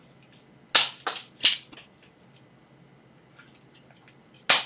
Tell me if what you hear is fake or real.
real